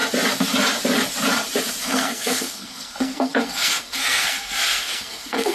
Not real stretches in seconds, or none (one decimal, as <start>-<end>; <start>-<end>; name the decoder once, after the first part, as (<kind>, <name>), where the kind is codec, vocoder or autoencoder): 1.8-5.5 (codec, SNAC)